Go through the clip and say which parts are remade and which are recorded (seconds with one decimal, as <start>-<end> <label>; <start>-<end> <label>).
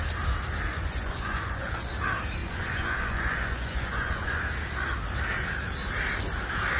0.0-0.7 recorded; 0.7-1.9 remade; 1.9-2.4 recorded; 2.4-4.4 remade; 4.4-6.8 recorded